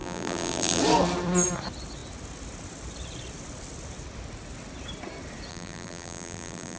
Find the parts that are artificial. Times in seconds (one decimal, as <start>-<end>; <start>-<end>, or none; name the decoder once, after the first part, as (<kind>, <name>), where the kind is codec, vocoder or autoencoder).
0.0-0.8 (vocoder, BigVGAN v2); 5.5-6.8